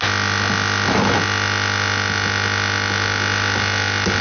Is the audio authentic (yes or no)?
yes